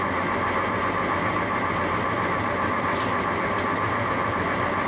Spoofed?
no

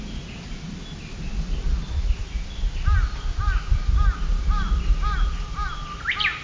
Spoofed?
no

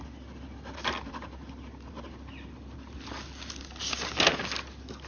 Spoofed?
no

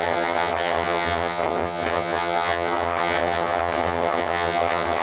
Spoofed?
yes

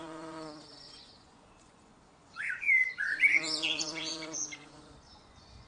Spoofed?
yes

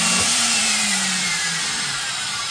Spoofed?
yes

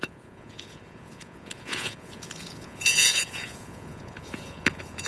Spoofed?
yes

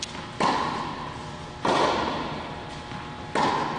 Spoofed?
no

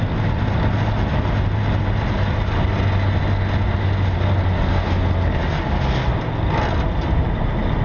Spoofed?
no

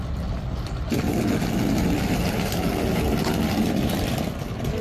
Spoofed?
no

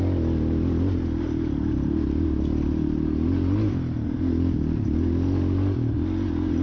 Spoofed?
no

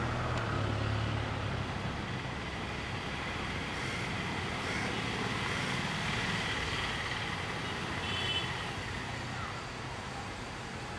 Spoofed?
no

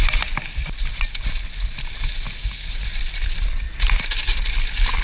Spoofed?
no